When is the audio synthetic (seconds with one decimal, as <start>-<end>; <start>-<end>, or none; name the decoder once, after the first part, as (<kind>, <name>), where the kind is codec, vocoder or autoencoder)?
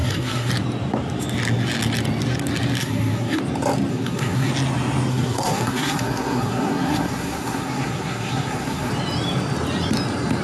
0.0-0.5 (codec, SNAC); 2.8-3.4; 3.9-4.5; 5.1-8.9